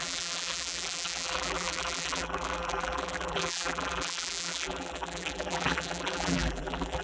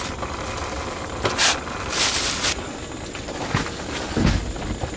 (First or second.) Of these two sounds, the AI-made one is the first